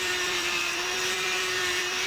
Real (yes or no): no